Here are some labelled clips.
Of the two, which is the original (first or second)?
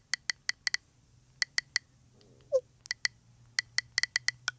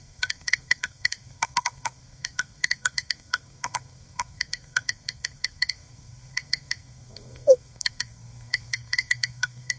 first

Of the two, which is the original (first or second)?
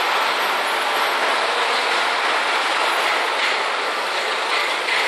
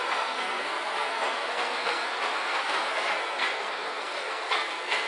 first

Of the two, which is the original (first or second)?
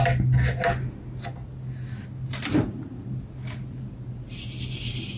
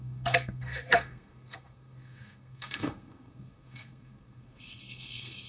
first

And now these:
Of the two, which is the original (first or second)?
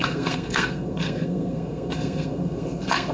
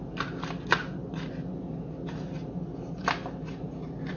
second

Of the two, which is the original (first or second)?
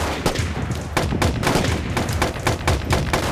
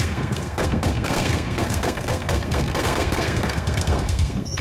first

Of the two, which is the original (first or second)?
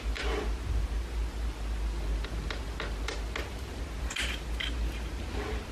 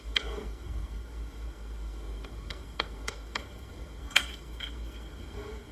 first